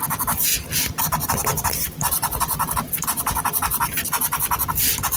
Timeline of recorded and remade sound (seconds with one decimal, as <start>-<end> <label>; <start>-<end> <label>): 0.0-1.5 recorded; 1.5-2.8 remade; 2.8-3.7 recorded; 3.7-5.2 remade